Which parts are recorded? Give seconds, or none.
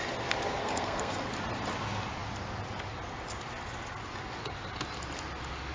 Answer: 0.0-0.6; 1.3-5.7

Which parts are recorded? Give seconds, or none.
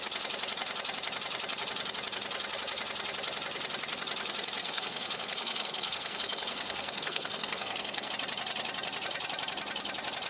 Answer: 0.0-4.6; 8.1-10.3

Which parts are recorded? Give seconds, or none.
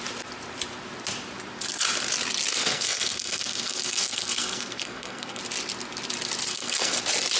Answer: 0.0-2.5; 5.4-6.5; 7.0-7.4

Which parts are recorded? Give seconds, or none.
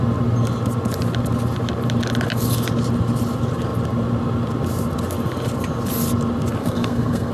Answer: 0.0-6.6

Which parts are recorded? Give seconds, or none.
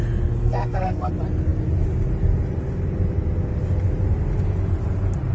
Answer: 0.0-0.4; 1.1-5.3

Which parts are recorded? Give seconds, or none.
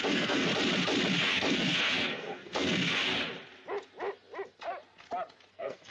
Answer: 0.5-1.2; 3.1-5.5